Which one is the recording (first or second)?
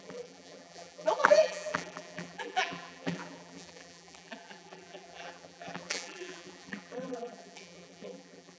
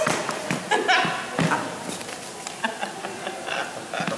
second